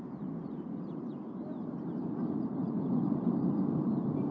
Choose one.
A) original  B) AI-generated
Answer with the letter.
A